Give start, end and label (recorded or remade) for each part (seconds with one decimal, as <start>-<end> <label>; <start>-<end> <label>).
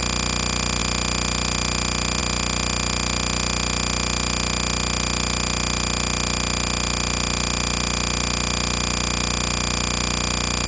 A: 0.0-10.7 recorded